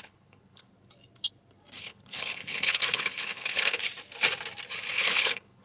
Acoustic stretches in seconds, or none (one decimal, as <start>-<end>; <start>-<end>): 0.7-1.8; 3.8-4.9